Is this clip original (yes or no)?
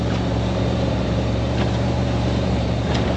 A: no